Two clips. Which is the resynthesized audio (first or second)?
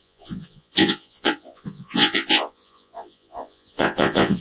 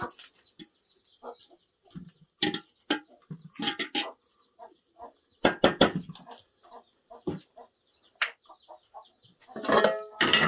first